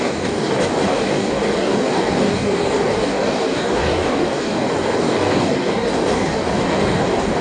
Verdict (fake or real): fake